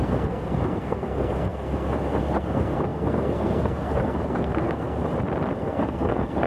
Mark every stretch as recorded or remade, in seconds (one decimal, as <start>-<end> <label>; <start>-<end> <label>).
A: 0.0-5.0 remade; 5.0-5.6 recorded; 5.6-6.5 remade